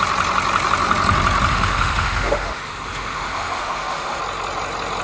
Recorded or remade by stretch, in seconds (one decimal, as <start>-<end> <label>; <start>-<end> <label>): 0.0-1.5 recorded; 1.5-4.2 remade; 4.2-5.0 recorded